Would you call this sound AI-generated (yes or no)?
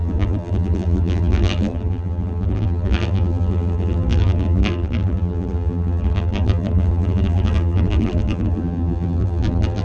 yes